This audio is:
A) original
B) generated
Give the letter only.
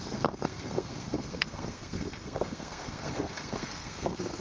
B